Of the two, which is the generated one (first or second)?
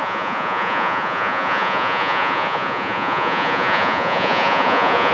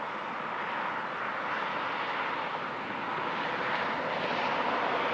first